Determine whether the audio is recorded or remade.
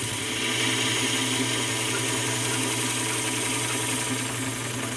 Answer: recorded